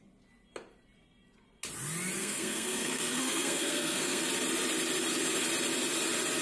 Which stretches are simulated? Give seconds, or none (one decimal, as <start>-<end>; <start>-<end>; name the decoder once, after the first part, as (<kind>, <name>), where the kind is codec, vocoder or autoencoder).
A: 2.2-4.2 (codec, SNAC)